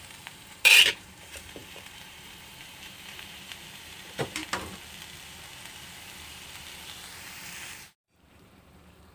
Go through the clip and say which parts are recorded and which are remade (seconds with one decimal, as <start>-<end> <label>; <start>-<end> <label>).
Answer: 0.0-4.4 remade; 4.4-7.2 recorded; 7.2-9.1 remade